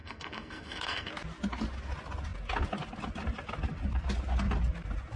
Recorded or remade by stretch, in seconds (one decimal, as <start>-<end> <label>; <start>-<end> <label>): 0.0-1.1 remade; 1.1-5.2 recorded